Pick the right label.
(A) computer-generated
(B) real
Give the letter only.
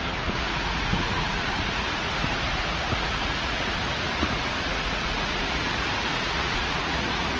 A